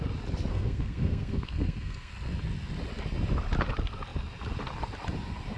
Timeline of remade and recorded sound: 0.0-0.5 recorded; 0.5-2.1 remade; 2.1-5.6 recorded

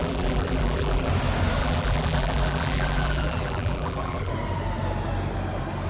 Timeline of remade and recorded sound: 0.0-1.1 remade; 1.1-1.6 recorded; 1.6-4.3 remade; 4.3-5.9 recorded

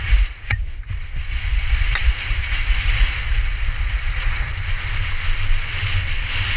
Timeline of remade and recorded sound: 0.0-4.5 remade; 4.5-6.6 recorded